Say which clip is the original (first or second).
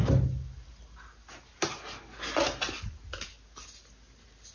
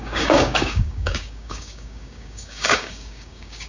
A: first